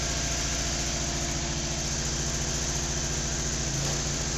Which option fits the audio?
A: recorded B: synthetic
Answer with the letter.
A